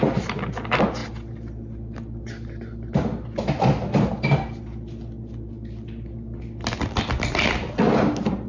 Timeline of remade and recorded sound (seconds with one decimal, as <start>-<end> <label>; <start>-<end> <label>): 0.0-8.5 recorded